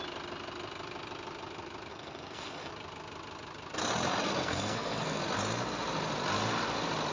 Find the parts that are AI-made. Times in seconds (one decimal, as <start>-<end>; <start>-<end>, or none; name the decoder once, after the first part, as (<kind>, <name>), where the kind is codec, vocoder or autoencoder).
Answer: 1.9-2.7 (codec, SNAC); 4.3-5.2